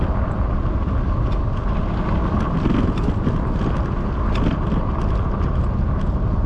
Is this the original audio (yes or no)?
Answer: yes